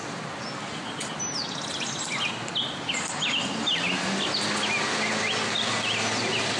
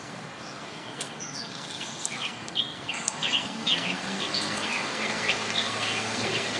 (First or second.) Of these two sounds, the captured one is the first